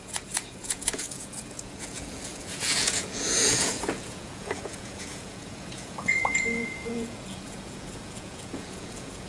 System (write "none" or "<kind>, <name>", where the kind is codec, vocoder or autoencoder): vocoder, Vocos